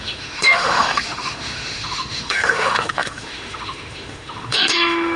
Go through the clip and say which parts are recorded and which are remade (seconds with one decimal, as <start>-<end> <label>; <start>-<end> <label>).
0.0-5.2 remade

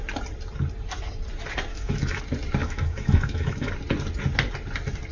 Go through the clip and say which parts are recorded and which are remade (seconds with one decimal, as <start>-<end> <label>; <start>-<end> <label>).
0.0-1.7 recorded; 1.7-2.2 remade; 2.2-2.6 recorded; 2.6-3.7 remade; 3.7-5.1 recorded